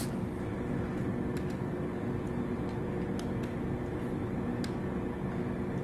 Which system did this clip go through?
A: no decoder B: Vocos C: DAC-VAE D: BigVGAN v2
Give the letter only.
A